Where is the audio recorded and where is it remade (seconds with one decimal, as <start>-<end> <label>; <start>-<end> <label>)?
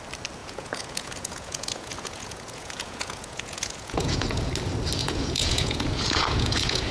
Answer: 0.0-0.4 recorded; 0.4-4.5 remade; 4.5-5.0 recorded; 5.0-6.9 remade